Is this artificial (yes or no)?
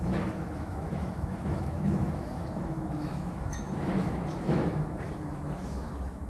yes